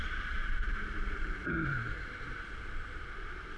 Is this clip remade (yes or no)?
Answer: yes